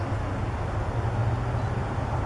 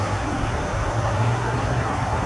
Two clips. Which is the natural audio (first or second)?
first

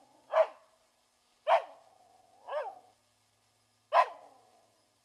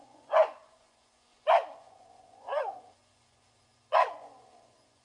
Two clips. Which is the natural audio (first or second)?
first